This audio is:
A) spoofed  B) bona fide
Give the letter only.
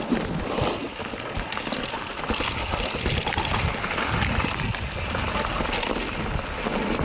B